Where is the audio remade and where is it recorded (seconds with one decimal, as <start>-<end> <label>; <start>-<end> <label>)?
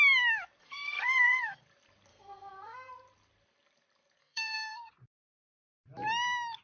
0.0-0.6 recorded; 0.6-1.6 remade; 1.6-2.1 recorded; 2.1-2.9 remade; 2.9-4.2 recorded; 4.2-4.9 remade; 4.9-6.6 recorded